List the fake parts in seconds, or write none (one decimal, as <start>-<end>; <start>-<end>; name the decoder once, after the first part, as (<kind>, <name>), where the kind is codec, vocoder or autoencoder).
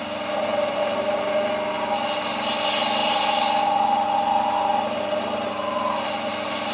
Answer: none